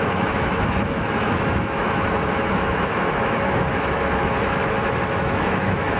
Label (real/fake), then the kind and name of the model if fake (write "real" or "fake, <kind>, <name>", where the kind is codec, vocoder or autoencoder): fake, autoencoder, DAC-VAE